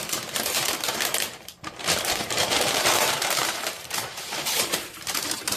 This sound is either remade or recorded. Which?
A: remade